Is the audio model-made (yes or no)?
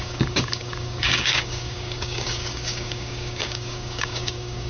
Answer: yes